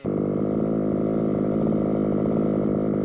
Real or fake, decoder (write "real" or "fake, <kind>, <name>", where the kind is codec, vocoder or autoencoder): real